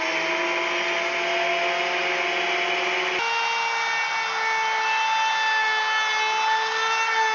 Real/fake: real